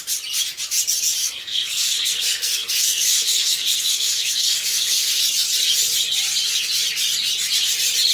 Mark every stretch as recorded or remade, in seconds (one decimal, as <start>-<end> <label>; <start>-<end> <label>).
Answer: 0.0-1.2 recorded; 1.2-5.2 remade; 5.2-8.1 recorded